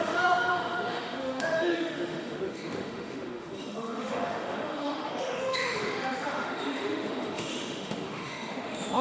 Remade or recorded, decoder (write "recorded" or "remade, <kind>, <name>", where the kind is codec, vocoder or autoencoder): remade, autoencoder, DAC-VAE